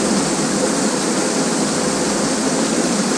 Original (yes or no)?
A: yes